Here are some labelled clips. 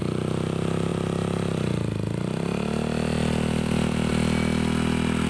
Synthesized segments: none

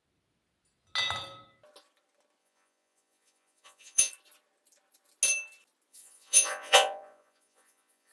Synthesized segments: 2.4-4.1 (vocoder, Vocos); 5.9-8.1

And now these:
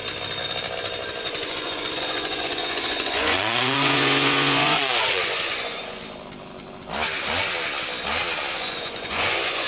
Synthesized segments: 1.2-6.0 (vocoder, Vocos); 8.5-9.7